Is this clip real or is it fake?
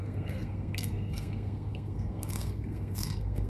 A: fake